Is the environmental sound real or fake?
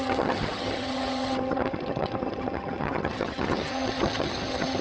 fake